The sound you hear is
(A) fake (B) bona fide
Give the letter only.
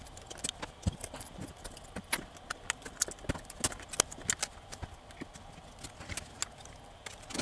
B